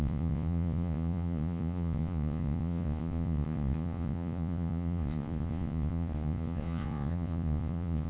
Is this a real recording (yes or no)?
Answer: no